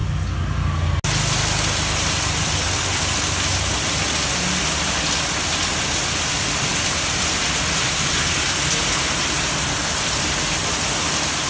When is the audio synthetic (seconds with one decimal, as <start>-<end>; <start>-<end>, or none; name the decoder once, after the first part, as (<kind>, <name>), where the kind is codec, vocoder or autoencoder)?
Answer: none